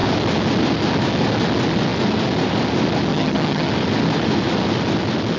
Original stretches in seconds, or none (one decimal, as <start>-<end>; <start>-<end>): 0.0-3.1; 3.7-5.4

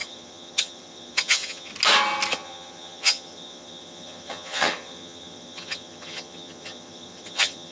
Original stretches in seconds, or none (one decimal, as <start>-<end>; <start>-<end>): 1.7-2.3

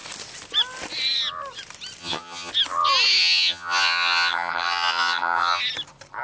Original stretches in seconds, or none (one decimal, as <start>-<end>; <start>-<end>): 0.0-2.0; 2.5-3.2; 5.6-6.2

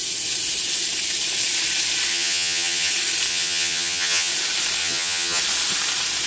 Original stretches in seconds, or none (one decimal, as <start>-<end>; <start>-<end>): 0.0-2.1; 2.9-3.3; 4.3-4.8; 5.4-6.3

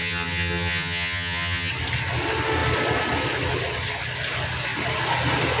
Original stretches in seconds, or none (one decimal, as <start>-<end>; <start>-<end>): 1.7-5.6

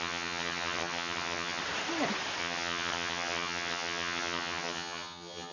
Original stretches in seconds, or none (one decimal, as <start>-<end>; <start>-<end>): 1.6-2.4

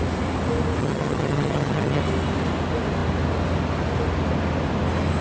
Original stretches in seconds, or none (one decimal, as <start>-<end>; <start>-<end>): 0.0-0.8; 2.0-5.2

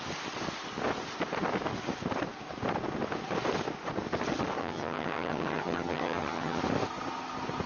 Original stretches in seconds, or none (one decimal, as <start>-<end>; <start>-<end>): 0.0-4.6; 6.6-7.7